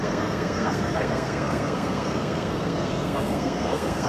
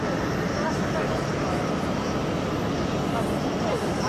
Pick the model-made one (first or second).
first